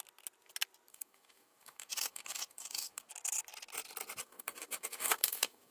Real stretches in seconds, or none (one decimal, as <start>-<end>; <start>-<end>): 0.0-0.9; 3.1-4.2